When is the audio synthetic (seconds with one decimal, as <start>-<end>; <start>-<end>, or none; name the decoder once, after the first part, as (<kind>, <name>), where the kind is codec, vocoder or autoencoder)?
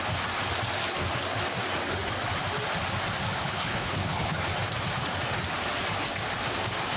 3.3-4.4 (codec, HILCodec)